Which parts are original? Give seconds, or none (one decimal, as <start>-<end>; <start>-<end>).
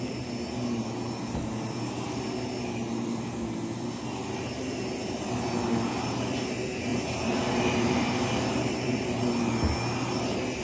0.0-6.9; 9.2-10.6